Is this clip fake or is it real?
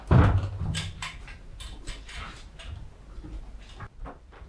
real